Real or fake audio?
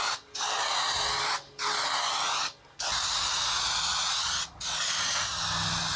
real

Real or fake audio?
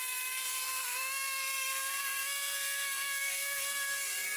fake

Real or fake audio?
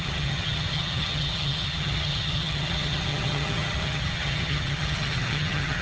fake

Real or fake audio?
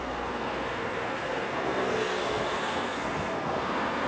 fake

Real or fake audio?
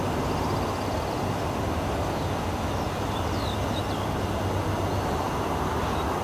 real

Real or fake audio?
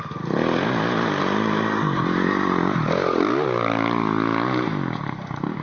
real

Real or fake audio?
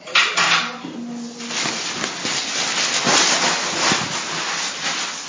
real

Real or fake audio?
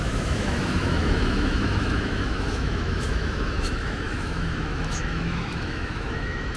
fake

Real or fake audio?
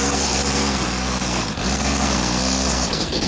fake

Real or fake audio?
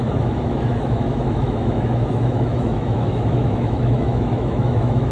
fake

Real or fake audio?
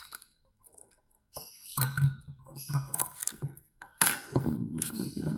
fake